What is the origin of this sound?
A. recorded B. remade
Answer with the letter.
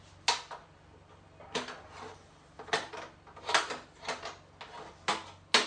A